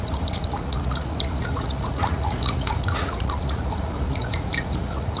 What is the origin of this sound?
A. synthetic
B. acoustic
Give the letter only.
A